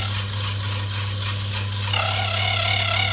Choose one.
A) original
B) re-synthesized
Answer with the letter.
A